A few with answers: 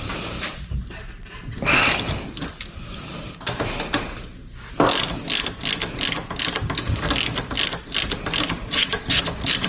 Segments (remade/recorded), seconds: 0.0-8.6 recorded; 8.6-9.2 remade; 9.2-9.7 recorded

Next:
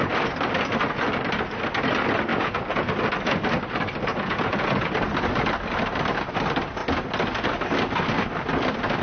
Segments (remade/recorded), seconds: 0.0-2.3 recorded; 2.3-2.9 remade; 2.9-4.1 recorded; 4.1-4.9 remade; 4.9-9.0 recorded

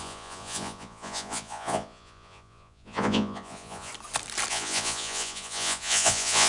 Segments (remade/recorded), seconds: 0.0-3.9 remade; 3.9-4.5 recorded; 4.5-6.5 remade

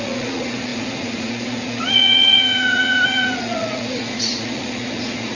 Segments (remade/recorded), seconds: 0.0-5.4 remade

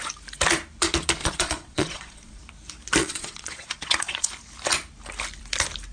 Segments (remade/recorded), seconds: 0.0-1.2 recorded; 1.2-2.4 remade; 2.4-3.0 recorded; 3.0-4.3 remade; 4.3-5.9 recorded

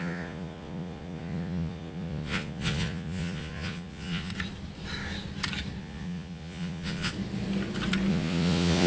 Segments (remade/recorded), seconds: 0.0-4.3 remade; 4.3-5.8 recorded; 5.8-7.1 remade; 7.1-8.1 recorded; 8.1-8.9 remade

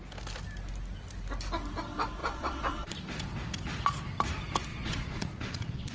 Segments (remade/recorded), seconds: 0.0-2.2 recorded; 2.2-3.0 remade; 3.0-4.7 recorded; 4.7-5.9 remade